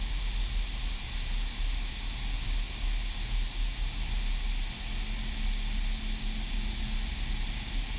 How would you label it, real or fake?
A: real